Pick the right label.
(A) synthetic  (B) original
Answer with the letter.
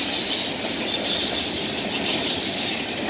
B